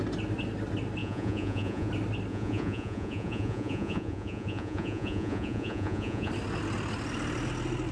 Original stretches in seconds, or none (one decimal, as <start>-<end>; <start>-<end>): 0.0-1.0; 1.9-2.3; 6.3-7.9

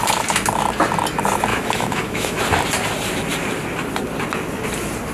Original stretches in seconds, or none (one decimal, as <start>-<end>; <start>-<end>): 0.0-1.5; 2.4-5.1